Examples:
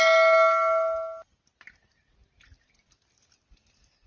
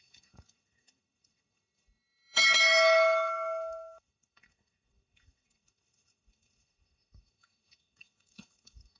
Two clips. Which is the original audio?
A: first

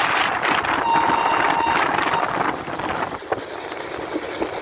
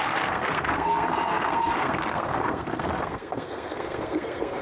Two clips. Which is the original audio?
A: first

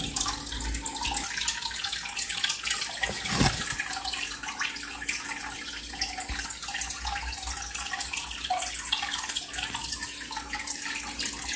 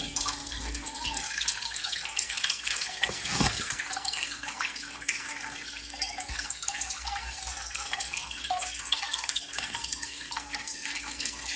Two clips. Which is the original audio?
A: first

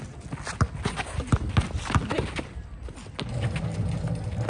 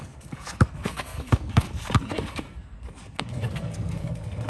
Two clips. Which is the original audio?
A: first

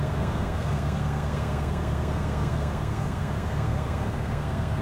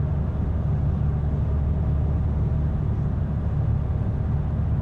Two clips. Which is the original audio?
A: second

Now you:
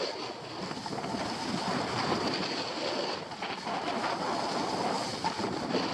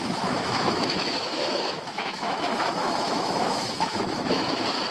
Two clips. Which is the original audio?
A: first